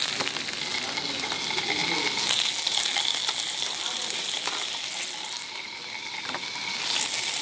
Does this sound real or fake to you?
real